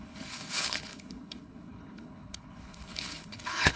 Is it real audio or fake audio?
fake